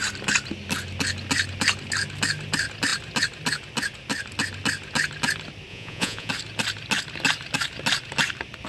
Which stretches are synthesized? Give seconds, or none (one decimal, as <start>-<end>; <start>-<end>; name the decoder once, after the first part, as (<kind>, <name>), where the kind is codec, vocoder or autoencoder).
5.7-6.3 (vocoder, Vocos)